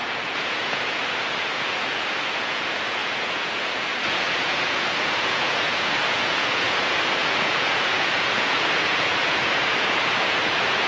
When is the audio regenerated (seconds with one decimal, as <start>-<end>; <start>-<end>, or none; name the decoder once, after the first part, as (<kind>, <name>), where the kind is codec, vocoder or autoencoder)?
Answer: 0.0-10.9 (vocoder, Vocos)

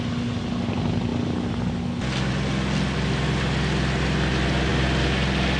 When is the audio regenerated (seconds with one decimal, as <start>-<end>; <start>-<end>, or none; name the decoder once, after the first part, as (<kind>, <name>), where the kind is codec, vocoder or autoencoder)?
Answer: none

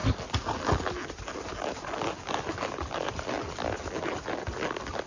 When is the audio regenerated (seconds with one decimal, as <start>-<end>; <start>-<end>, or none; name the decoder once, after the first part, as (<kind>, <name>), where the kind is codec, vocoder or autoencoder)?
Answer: none

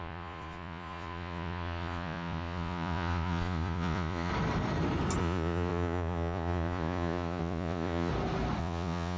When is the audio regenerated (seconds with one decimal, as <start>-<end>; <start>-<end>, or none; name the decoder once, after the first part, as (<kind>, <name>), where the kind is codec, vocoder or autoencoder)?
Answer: 0.0-4.3 (vocoder, Vocos); 5.2-8.1; 8.6-9.2

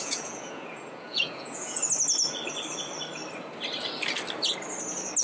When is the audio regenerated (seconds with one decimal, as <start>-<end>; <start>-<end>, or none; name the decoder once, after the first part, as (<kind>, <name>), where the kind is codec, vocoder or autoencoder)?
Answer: 0.0-1.8 (vocoder, Vocos)

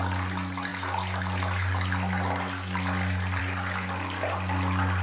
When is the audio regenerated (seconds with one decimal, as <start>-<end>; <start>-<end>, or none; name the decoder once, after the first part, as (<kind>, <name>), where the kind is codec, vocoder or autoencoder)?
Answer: none